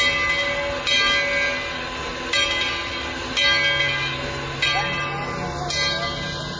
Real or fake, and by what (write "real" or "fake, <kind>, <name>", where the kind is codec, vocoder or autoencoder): real